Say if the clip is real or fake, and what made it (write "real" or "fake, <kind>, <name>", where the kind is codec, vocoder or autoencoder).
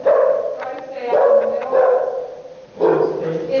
real